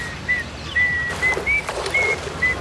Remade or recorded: recorded